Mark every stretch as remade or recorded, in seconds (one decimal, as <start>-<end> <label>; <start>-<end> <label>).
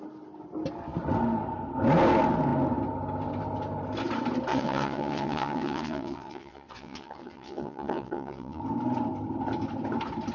0.0-4.5 recorded; 4.5-8.6 remade; 8.6-10.3 recorded